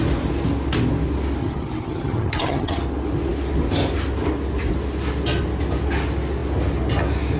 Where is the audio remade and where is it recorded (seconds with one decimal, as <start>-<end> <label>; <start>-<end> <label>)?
0.0-1.4 recorded; 1.4-2.8 remade; 2.8-7.4 recorded